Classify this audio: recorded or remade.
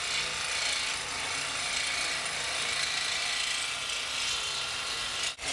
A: recorded